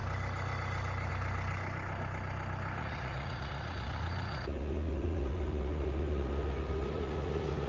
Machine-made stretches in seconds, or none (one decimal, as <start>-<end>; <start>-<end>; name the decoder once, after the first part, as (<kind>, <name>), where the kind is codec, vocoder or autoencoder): 2.8-7.7 (vocoder, Vocos)